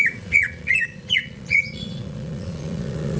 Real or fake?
fake